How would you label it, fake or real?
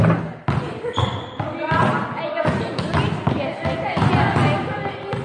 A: real